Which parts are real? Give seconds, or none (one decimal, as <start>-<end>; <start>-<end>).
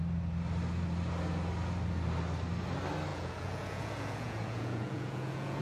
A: 0.0-3.1